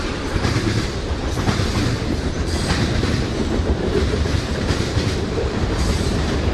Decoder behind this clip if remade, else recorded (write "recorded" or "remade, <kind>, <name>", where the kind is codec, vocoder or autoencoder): remade, vocoder, BigVGAN v2